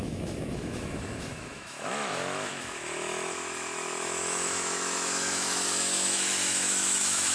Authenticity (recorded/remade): remade